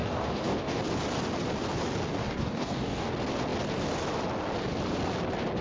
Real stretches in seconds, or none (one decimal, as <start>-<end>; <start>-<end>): 0.8-2.2; 3.1-5.6